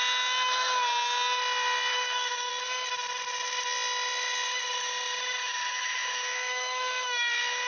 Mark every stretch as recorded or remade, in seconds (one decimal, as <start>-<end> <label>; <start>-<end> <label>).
0.0-1.9 recorded; 1.9-2.5 remade; 2.5-5.4 recorded; 5.4-7.7 remade